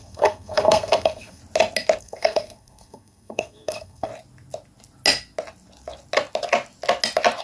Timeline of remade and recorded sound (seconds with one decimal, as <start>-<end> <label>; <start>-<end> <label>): 0.0-1.4 remade; 1.4-2.0 recorded; 2.0-4.1 remade; 4.1-7.4 recorded